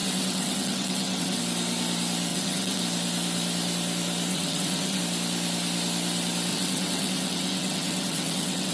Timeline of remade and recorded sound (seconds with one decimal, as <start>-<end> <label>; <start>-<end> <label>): 0.0-1.4 remade; 1.4-2.3 recorded; 2.3-2.8 remade; 2.8-4.3 recorded; 4.3-5.0 remade; 5.0-6.5 recorded; 6.5-8.7 remade